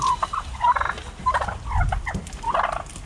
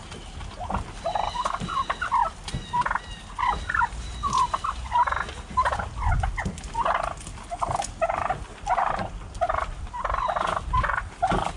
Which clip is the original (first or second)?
second